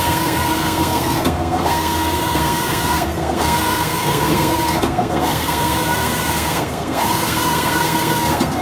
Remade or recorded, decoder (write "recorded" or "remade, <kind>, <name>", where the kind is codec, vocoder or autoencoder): remade, codec, SNAC